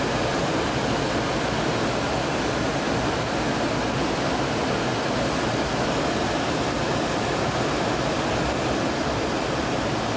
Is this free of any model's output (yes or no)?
yes